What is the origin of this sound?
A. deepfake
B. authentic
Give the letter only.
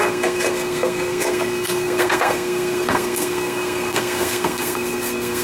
A